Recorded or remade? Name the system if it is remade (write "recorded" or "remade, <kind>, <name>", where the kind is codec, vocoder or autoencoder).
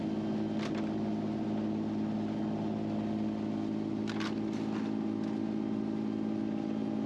recorded